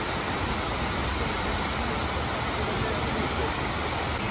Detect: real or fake real